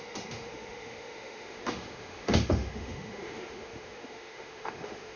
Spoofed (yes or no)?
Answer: yes